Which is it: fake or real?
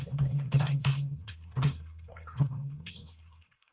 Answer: fake